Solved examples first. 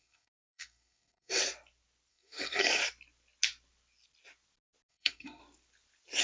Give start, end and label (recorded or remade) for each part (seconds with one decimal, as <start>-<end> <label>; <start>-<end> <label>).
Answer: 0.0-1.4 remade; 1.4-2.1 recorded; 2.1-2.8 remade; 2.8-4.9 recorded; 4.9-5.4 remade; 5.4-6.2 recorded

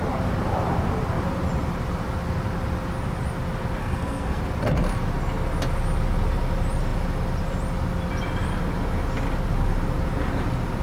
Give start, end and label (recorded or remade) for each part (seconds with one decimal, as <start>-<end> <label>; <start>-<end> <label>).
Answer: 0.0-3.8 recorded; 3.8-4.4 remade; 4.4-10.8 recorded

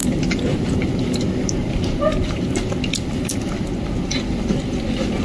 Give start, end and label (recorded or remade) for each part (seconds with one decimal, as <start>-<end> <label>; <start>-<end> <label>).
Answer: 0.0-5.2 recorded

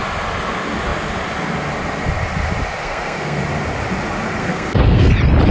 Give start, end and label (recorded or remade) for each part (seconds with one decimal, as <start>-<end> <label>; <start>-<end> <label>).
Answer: 0.0-2.8 recorded; 2.8-3.4 remade; 3.4-4.4 recorded; 4.4-5.1 remade; 5.1-5.5 recorded

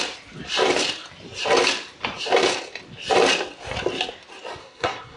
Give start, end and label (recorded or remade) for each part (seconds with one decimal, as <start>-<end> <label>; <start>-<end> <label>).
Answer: 0.0-4.6 recorded; 4.6-5.2 remade